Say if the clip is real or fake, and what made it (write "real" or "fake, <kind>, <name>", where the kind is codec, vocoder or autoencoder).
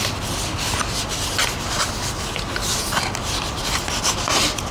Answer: real